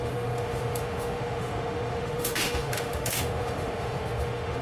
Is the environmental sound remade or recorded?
remade